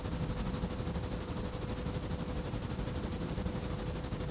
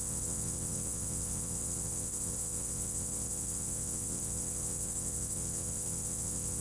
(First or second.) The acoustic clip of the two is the first